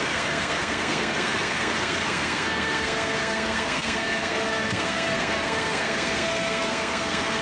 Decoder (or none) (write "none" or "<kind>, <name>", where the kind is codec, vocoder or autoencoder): codec, SNAC